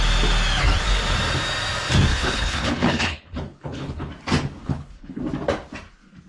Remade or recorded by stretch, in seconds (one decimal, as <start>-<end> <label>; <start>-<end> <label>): 0.0-2.1 recorded; 2.1-4.1 remade; 4.1-4.6 recorded; 4.6-5.2 remade; 5.2-6.3 recorded